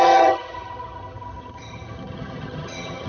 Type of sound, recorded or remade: remade